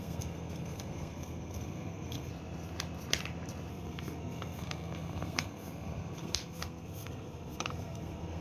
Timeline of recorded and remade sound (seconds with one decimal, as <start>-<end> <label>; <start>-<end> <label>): 0.0-2.3 remade; 2.3-3.7 recorded; 3.7-8.4 remade